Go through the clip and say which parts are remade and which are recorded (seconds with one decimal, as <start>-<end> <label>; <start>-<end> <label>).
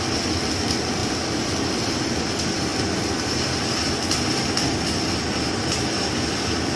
0.0-6.8 recorded